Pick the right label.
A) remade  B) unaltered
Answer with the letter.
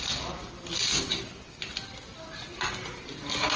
B